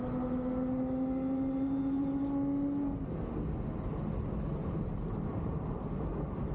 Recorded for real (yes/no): yes